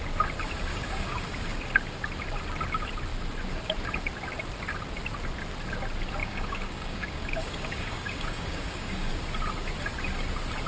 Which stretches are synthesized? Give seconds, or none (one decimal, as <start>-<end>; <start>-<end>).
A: 0.7-1.3; 6.2-9.1